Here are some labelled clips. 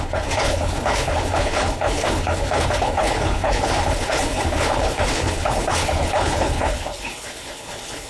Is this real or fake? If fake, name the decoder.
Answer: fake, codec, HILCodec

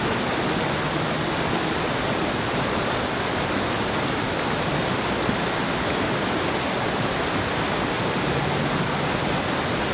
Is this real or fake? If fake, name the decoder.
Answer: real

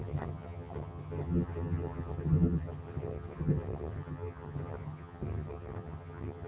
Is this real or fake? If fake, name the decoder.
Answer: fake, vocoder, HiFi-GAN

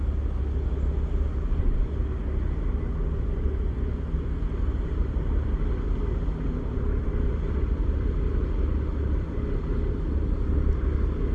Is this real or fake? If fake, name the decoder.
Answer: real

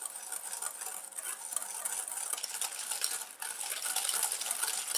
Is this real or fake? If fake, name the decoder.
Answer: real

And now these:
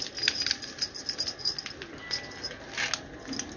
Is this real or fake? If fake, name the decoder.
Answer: real